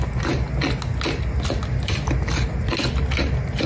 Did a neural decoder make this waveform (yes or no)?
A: no